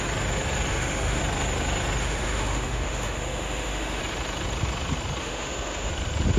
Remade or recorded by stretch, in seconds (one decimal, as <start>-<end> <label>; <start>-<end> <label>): 0.0-0.7 recorded; 0.7-1.2 remade; 1.2-2.0 recorded; 2.0-4.0 remade; 4.0-5.2 recorded; 5.2-5.9 remade; 5.9-6.4 recorded